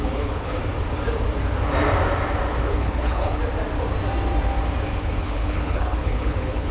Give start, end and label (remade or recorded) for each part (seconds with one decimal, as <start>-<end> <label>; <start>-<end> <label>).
0.0-0.6 remade; 0.6-2.7 recorded; 2.7-3.4 remade; 3.4-5.0 recorded; 5.0-6.7 remade